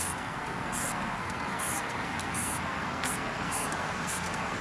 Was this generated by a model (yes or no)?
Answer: yes